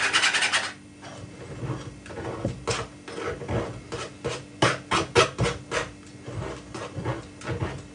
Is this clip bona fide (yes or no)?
yes